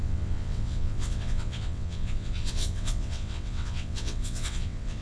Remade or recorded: remade